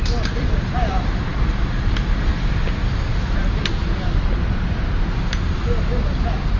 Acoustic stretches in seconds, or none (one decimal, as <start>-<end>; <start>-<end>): 2.3-2.8; 3.8-5.8